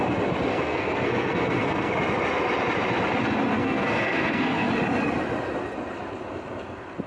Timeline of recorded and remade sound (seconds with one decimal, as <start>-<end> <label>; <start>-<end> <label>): 0.0-0.5 recorded; 0.5-1.9 remade; 1.9-3.5 recorded; 3.5-4.7 remade; 4.7-7.1 recorded